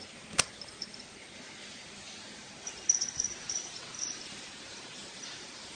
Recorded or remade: remade